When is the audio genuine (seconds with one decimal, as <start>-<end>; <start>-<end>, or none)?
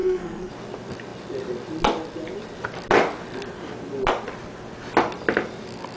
0.5-6.0